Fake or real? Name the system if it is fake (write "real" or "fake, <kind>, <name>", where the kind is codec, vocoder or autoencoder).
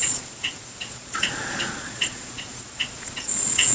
fake, vocoder, Vocos